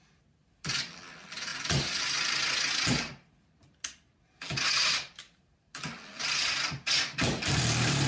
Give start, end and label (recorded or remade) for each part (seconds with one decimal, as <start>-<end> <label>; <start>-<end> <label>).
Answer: 0.0-8.1 recorded